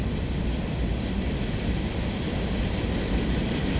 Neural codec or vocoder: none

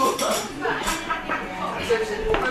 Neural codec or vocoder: vocoder, BigVGAN v2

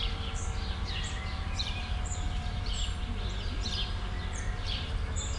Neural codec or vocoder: vocoder, BigVGAN v2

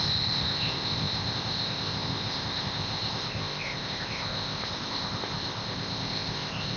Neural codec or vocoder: codec, ZipCodec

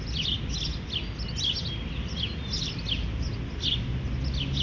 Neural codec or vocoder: none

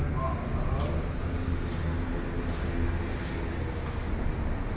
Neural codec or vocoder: none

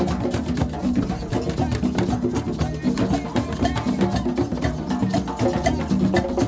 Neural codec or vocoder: none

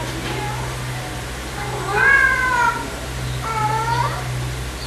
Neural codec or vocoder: none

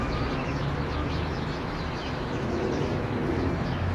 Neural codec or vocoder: autoencoder, DAC-VAE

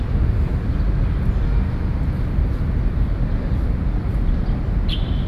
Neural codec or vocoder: none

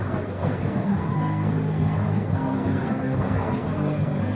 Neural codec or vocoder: codec, SNAC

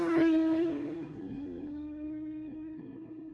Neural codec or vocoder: codec, SNAC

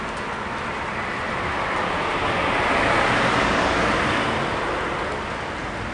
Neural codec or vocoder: none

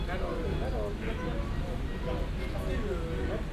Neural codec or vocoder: none